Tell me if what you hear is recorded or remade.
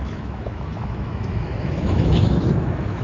remade